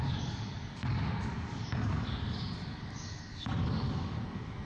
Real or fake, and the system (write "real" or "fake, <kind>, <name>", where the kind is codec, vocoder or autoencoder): fake, codec, DAC